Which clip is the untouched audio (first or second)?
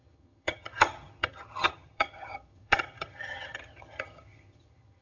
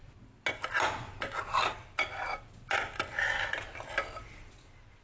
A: second